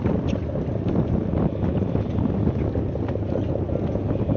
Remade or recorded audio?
recorded